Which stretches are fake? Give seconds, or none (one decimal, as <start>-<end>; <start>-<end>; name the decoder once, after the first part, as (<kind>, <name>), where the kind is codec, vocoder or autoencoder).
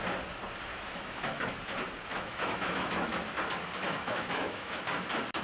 0.7-1.6 (autoencoder, DAC-VAE); 2.1-3.2; 3.8-4.8